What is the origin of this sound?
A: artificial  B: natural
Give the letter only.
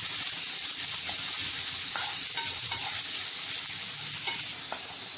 B